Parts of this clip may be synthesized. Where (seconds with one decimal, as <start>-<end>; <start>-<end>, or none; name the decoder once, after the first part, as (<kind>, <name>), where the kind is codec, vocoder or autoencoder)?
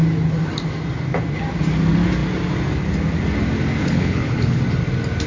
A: 3.8-4.6 (codec, HILCodec)